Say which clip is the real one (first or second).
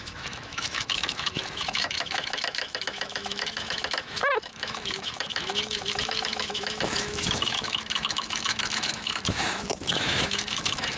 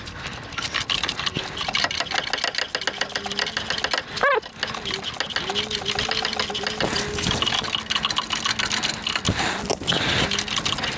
second